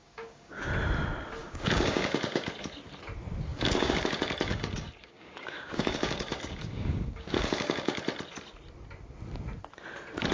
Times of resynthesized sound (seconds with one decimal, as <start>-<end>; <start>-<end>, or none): 0.0-0.7; 1.4-2.5; 3.5-8.0